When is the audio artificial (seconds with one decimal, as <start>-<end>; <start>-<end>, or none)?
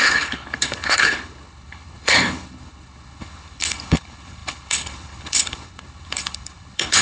0.0-7.0